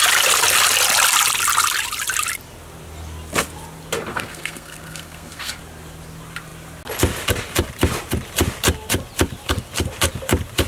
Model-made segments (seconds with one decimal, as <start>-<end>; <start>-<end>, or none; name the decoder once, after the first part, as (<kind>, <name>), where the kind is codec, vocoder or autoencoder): 4.1-5.6 (codec, SNAC)